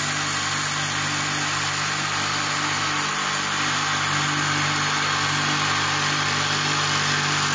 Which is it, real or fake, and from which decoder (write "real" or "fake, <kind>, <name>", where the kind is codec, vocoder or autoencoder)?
real